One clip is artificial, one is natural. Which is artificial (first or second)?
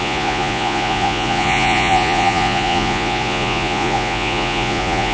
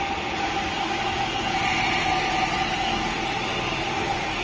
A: first